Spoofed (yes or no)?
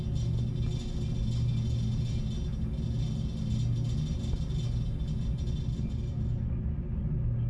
no